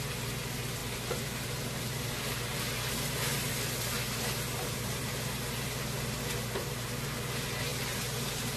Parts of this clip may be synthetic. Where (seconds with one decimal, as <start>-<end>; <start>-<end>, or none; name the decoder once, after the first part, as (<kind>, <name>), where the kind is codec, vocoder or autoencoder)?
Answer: none